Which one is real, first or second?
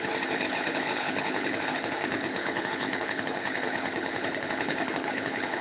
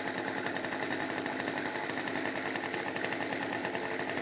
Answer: second